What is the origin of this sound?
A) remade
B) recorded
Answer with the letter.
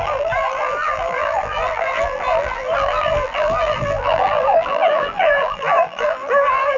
A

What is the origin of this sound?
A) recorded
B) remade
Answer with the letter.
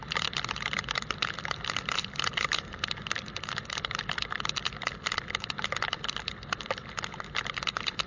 B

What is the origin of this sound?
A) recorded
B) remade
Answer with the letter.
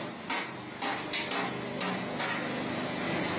A